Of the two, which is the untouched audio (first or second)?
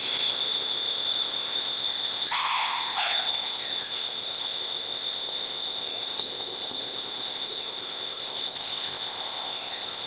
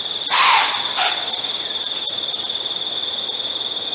second